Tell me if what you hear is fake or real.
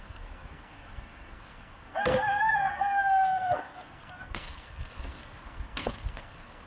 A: fake